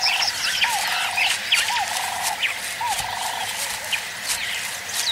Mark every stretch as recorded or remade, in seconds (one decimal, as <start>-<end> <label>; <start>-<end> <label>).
0.0-5.1 recorded